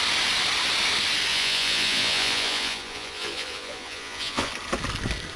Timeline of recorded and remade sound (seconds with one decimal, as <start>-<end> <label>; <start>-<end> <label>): 0.0-1.3 recorded; 1.3-4.5 remade; 4.5-5.4 recorded